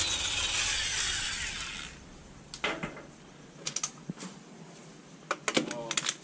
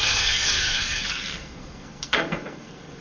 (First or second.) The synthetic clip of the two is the second